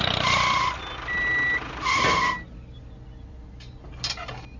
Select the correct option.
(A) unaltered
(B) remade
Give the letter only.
A